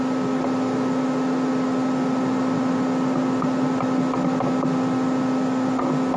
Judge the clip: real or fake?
real